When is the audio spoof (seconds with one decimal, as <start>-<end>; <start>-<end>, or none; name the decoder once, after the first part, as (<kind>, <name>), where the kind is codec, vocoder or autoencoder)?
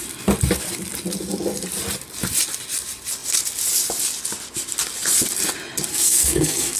5.9-6.8 (codec, SNAC)